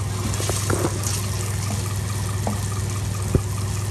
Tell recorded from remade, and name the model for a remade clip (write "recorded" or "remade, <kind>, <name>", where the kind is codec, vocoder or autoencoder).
recorded